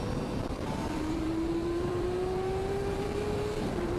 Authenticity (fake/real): fake